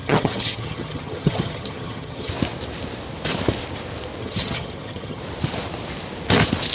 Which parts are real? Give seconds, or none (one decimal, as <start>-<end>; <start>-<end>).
2.3-4.2; 5.2-6.7